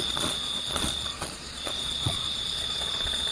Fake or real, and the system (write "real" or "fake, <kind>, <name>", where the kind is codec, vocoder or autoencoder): fake, vocoder, Vocos